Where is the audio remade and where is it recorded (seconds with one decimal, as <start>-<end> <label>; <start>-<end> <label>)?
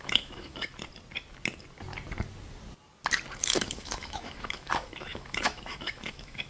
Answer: 0.0-0.7 remade; 0.7-3.4 recorded; 3.4-6.5 remade